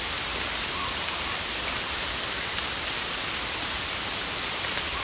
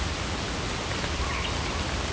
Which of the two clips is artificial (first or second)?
first